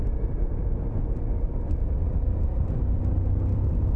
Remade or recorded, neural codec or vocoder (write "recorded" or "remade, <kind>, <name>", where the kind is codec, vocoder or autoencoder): recorded